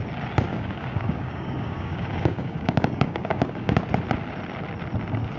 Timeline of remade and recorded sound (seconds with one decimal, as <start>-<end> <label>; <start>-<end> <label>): 0.0-0.5 recorded; 0.5-3.7 remade; 3.7-5.4 recorded